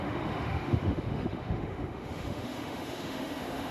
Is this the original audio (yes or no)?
no